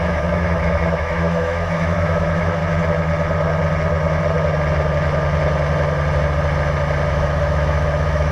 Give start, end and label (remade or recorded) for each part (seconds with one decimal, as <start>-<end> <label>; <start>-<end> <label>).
0.0-2.6 remade; 2.6-7.1 recorded; 7.1-8.3 remade